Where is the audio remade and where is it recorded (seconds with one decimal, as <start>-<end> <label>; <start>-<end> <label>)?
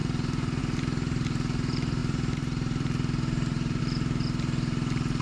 0.0-5.2 remade